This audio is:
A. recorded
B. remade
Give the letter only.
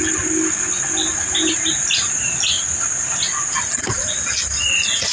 A